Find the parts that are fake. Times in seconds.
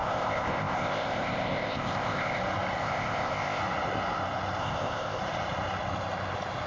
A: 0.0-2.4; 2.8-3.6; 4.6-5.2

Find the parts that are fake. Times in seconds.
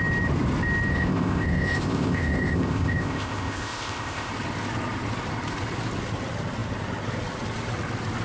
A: 0.9-4.3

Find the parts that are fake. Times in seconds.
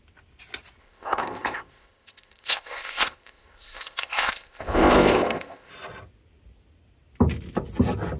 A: 0.8-5.7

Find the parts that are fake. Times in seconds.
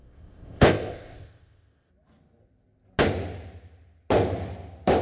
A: 0.0-1.9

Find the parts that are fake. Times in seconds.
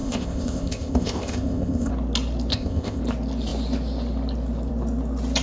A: 0.0-1.9; 2.5-3.0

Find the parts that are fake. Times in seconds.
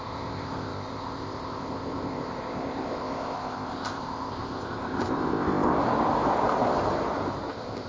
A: 0.0-5.8; 7.5-7.9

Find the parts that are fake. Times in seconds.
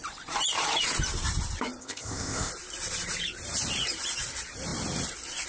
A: 1.8-2.5